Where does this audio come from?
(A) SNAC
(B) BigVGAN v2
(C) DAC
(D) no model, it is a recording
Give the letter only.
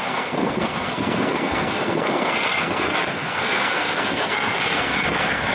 A